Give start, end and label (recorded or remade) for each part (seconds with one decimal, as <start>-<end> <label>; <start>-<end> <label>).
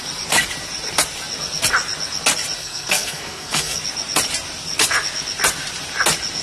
0.0-2.6 recorded; 2.6-3.8 remade; 3.8-6.4 recorded